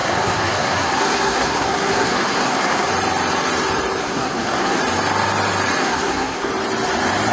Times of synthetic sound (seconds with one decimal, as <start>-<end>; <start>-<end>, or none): 0.0-2.9; 4.0-4.8; 5.8-6.5